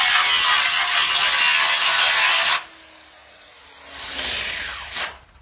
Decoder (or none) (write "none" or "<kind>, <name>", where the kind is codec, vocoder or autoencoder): none